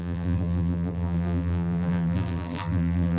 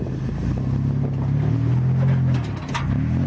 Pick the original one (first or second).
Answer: second